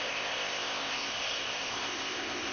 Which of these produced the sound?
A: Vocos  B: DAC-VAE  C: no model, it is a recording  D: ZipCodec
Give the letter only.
D